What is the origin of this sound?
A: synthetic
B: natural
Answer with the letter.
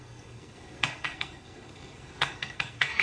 A